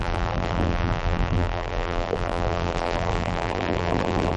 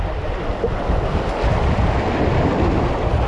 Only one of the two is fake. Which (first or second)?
first